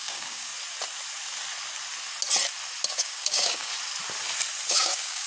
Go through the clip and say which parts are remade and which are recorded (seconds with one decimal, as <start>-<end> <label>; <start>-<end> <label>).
0.0-0.5 remade; 0.5-2.9 recorded; 2.9-3.7 remade; 3.7-4.7 recorded; 4.7-5.3 remade